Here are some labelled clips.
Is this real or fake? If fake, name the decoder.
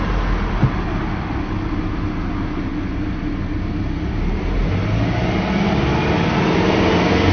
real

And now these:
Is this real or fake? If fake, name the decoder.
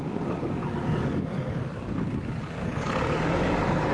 fake, codec, DAC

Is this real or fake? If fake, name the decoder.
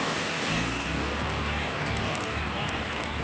fake, codec, DAC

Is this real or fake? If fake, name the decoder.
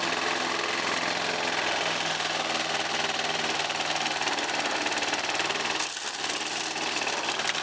real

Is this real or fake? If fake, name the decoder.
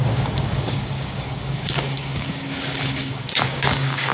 fake, codec, DAC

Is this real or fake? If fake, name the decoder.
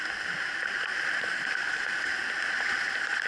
real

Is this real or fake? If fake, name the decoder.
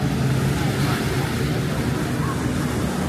real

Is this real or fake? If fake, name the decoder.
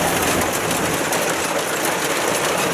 real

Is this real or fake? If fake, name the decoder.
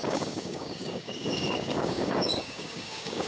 fake, codec, DAC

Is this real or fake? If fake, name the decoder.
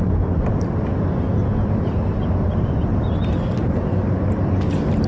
real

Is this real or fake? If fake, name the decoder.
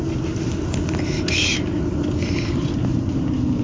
real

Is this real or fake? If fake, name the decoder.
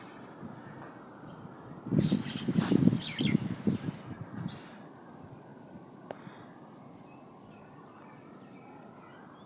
real